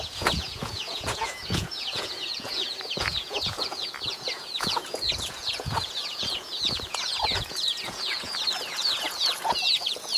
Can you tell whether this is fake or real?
fake